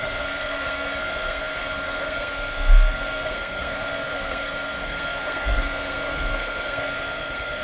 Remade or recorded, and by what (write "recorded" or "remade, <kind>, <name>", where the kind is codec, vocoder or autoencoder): remade, codec, SNAC